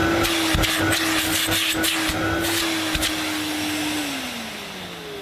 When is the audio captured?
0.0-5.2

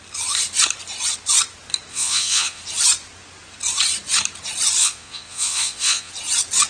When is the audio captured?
0.0-1.9; 2.6-4.8; 6.1-6.7